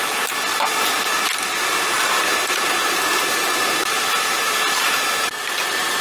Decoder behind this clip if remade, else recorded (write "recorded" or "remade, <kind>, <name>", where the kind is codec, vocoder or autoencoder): recorded